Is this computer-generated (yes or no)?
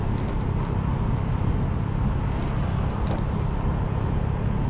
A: no